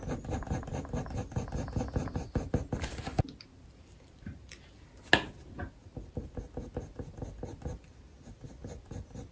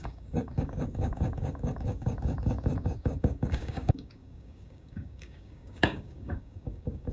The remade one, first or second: second